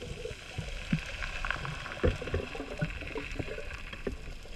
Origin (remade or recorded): remade